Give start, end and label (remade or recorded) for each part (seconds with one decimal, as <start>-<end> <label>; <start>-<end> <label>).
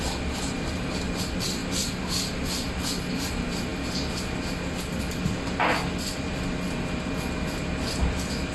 0.0-8.5 recorded